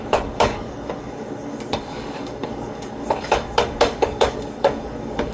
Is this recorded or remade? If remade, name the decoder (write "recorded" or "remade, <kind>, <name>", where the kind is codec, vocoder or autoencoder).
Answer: remade, codec, DAC